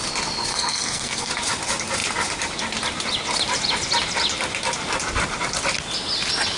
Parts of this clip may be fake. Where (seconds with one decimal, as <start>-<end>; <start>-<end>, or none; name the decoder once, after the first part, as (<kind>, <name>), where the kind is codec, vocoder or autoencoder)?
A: 0.5-1.3 (codec, SNAC)